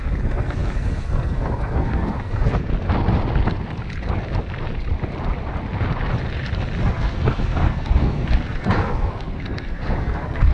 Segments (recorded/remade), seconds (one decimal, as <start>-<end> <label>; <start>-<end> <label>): 0.0-2.7 remade; 2.7-6.8 recorded; 6.8-10.5 remade